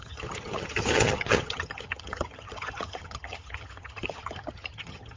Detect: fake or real fake